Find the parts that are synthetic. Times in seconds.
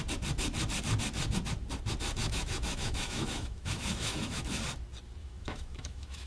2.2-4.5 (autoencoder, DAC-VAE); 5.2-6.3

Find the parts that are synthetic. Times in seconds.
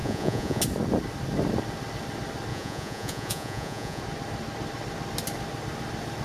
0.0-0.6 (vocoder, Vocos); 2.5-4.0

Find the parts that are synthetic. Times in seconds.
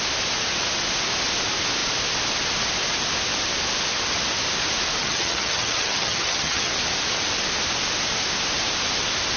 5.0-6.7 (vocoder, HiFi-GAN)